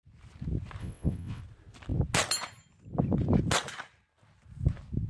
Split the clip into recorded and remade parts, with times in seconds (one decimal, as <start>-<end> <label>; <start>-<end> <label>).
0.0-0.8 recorded; 0.8-1.4 remade; 1.4-5.1 recorded